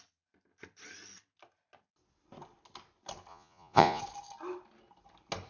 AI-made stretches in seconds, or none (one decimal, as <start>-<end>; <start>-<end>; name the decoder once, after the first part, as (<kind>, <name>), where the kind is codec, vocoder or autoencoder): 3.3-4.0 (vocoder, Vocos)